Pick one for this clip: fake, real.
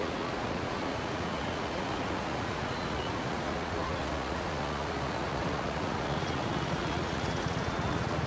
fake